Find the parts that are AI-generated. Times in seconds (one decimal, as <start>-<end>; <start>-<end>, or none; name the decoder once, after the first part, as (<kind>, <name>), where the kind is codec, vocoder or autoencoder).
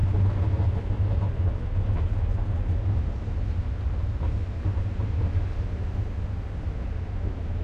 2.3-6.1 (vocoder, BigVGAN v2)